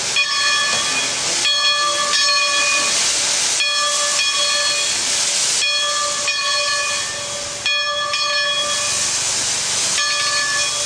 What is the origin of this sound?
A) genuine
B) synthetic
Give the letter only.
A